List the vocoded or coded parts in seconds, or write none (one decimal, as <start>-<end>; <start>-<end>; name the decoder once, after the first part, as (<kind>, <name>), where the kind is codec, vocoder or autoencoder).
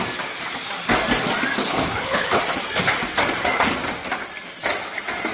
1.6-2.4 (codec, HILCodec)